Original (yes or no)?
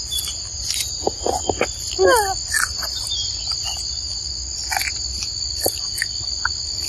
yes